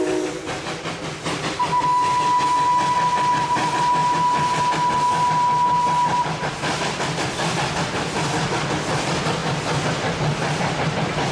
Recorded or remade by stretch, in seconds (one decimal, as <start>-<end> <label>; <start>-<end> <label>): 0.0-9.4 recorded; 9.4-11.3 remade